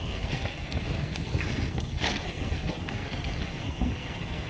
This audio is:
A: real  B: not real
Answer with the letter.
B